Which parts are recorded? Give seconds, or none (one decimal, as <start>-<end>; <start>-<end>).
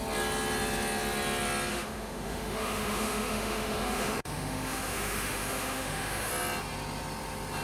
0.0-1.7; 6.3-7.6